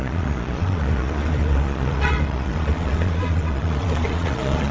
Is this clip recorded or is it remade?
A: remade